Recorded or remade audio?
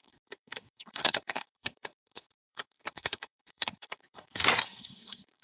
remade